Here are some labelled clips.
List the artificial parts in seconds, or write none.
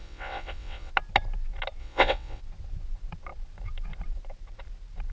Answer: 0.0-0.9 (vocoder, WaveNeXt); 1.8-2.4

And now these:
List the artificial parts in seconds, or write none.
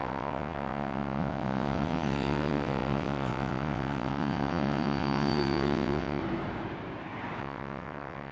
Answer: 0.0-6.2 (vocoder, WaveNeXt); 7.4-8.3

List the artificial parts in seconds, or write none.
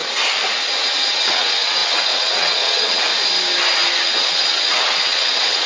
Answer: 1.0-3.1 (vocoder, WaveNeXt); 4.0-5.7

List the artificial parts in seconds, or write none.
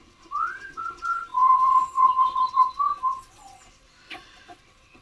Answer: 0.0-5.0 (vocoder, WaveNeXt)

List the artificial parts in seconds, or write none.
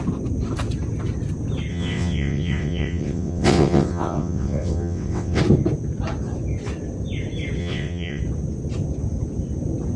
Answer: 1.7-5.4 (vocoder, WaveNeXt); 7.6-8.2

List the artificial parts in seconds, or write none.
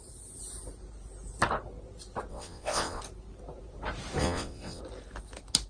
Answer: 2.3-3.0 (vocoder, WaveNeXt); 4.2-4.8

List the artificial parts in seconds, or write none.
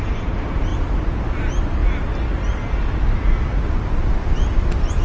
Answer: none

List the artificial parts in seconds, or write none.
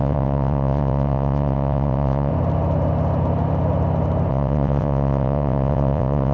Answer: 0.0-2.3 (vocoder, WaveNeXt); 4.3-6.3